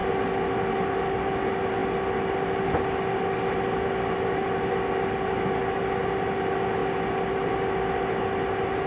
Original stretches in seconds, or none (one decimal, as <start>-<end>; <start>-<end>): 0.0-8.9

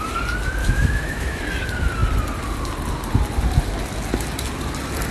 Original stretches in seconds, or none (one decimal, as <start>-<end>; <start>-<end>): 0.0-0.6; 1.4-5.1

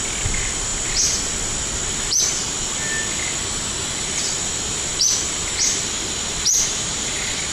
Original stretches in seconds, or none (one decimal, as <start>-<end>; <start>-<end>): 0.0-6.5; 7.1-7.5

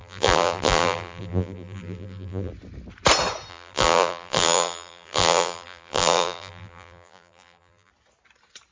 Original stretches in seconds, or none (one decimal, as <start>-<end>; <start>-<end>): 2.5-3.5; 7.9-8.7

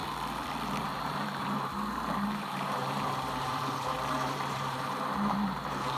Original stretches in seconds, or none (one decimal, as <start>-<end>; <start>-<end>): 0.0-0.8

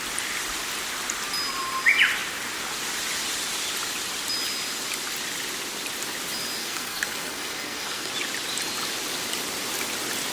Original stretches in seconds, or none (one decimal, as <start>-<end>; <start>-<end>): 0.0-6.6; 8.1-10.3